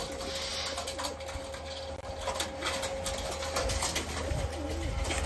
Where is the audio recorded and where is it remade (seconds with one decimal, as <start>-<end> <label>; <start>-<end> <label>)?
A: 0.0-5.3 recorded